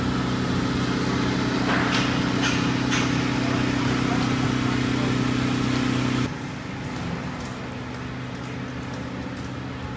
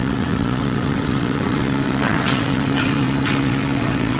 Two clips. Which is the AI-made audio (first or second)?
second